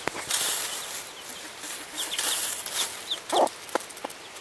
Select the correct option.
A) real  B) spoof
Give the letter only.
A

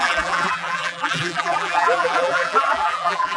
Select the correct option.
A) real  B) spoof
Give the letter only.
B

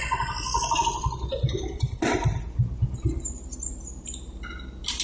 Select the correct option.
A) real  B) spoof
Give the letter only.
A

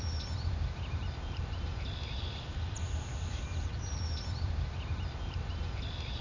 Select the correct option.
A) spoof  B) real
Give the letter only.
A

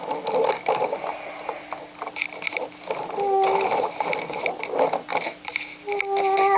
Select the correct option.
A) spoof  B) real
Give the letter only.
B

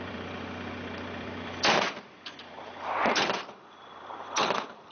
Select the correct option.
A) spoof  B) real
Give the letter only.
A